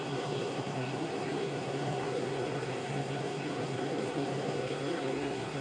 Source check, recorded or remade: remade